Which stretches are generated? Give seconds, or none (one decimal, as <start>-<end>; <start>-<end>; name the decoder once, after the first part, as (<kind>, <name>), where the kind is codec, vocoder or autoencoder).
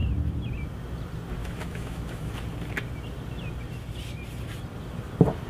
1.4-2.3 (autoencoder, DAC-VAE)